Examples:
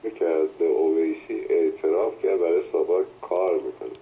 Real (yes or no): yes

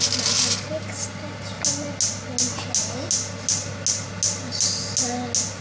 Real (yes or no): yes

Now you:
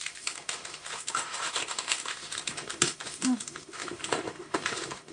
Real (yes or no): no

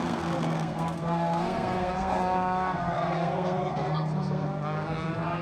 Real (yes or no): no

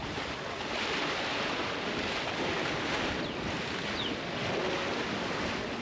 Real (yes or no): yes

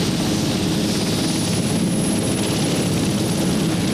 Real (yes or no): yes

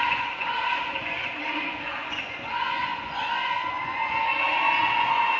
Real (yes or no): no